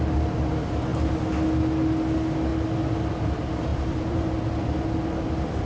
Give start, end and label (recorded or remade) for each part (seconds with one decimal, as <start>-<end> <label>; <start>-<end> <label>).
0.0-3.7 recorded; 3.7-4.3 remade; 4.3-5.7 recorded